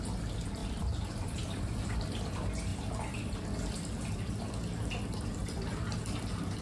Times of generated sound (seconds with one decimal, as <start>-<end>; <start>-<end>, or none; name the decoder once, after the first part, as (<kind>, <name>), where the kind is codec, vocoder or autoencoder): 0.6-2.3 (vocoder, BigVGAN v2); 2.7-4.3; 5.4-6.0

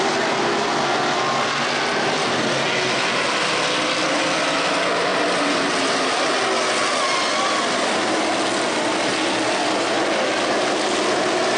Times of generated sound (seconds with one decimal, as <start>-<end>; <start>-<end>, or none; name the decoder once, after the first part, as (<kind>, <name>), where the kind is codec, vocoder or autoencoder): none

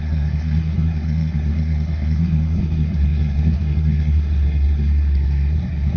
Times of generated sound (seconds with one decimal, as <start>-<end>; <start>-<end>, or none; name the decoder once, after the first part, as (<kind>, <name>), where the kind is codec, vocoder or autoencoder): 0.0-6.0 (codec, SNAC)

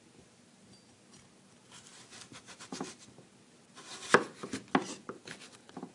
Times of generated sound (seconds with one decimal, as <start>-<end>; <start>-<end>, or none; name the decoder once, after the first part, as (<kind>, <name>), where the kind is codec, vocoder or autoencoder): none